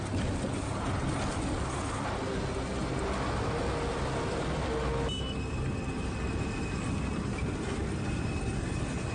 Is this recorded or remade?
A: recorded